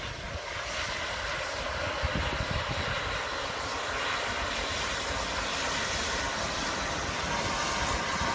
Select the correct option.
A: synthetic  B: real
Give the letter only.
B